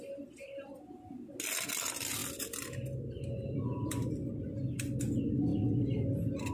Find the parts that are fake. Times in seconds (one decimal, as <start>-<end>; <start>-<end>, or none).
2.2-4.1